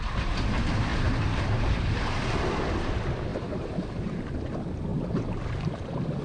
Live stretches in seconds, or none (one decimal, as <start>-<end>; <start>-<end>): 0.0-0.9; 2.2-3.3; 4.2-4.9; 5.8-6.2